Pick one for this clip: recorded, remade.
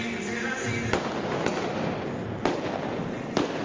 recorded